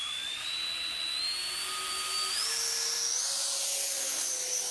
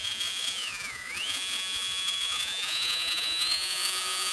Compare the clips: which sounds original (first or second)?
first